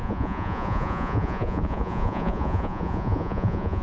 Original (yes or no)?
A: no